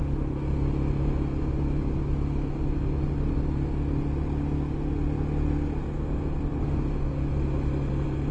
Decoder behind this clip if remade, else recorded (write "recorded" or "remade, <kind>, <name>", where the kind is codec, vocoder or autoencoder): recorded